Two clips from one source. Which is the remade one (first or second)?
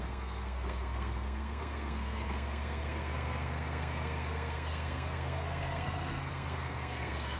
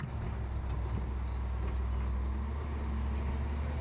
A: first